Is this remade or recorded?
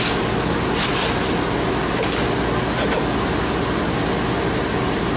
recorded